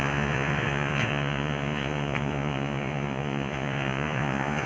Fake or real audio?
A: fake